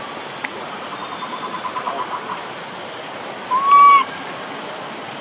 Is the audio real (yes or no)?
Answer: yes